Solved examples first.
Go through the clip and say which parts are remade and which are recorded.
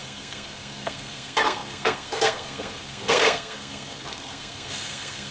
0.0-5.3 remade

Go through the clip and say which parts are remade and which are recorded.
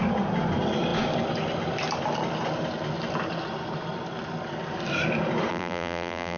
0.0-5.5 recorded; 5.5-6.4 remade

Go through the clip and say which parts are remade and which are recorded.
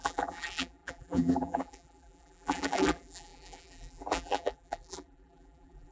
0.0-5.9 remade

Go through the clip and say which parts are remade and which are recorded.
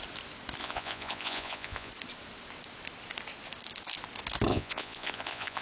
0.0-0.6 recorded; 0.6-1.9 remade; 1.9-4.5 recorded; 4.5-5.6 remade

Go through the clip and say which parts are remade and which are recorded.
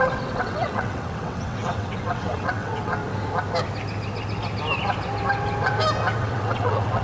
0.0-3.0 remade; 3.0-6.2 recorded; 6.2-7.0 remade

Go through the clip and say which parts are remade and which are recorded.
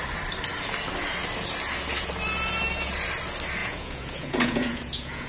0.0-3.6 recorded; 3.6-5.3 remade